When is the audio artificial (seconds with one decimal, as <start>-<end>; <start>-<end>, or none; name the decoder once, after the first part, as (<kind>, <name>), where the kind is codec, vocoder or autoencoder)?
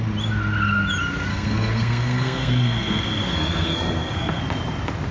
1.3-4.4 (codec, SNAC)